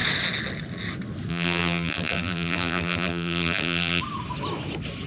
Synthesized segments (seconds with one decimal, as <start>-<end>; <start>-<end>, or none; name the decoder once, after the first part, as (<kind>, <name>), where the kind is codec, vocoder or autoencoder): 1.3-4.0 (vocoder, BigVGAN v2)